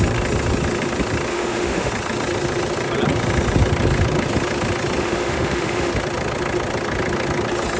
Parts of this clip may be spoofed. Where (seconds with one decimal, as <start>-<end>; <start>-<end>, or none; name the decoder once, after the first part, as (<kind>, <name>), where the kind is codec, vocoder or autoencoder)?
1.3-1.9 (autoencoder, DAC-VAE); 5.0-5.9